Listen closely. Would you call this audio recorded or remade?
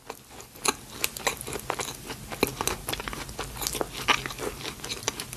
recorded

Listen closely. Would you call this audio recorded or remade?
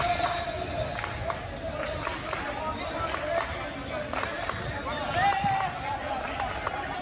recorded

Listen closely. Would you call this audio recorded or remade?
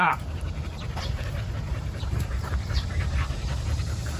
remade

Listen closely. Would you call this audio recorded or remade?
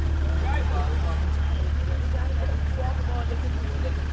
recorded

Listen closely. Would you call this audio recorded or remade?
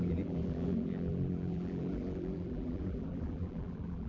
remade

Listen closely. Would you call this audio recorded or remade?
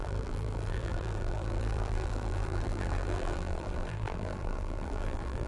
remade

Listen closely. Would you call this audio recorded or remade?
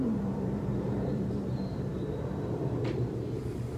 remade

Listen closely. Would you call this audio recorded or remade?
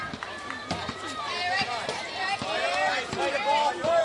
remade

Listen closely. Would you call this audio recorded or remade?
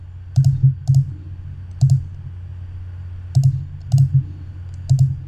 recorded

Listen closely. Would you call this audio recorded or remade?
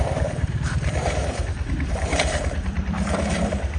remade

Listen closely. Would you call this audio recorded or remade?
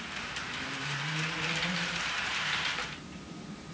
remade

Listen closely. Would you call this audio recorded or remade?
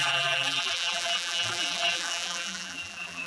remade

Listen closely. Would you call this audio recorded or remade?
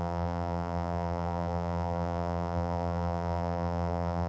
remade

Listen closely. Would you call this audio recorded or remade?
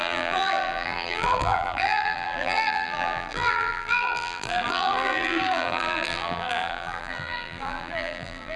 remade